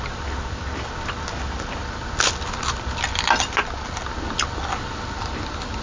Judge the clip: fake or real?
real